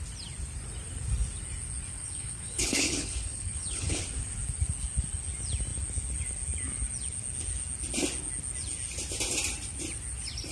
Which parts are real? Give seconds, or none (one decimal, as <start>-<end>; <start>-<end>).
0.0-1.9; 4.0-10.5